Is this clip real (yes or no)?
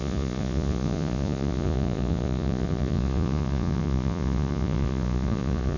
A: no